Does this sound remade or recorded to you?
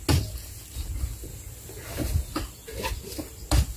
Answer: recorded